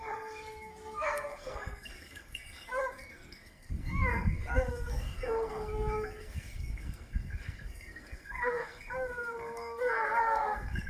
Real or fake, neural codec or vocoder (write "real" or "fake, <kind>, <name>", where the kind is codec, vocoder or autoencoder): fake, codec, SNAC